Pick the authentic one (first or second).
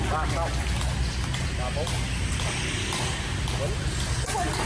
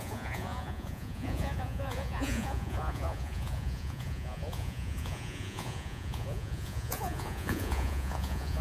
first